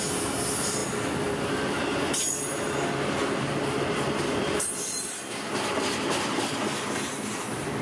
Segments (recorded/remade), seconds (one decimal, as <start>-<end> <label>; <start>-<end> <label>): 0.0-7.8 recorded